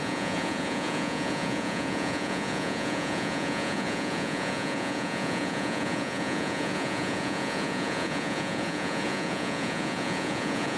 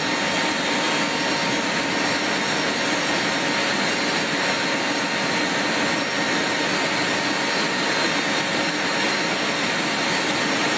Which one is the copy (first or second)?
first